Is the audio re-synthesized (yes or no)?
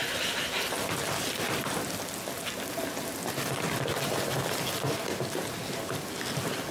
no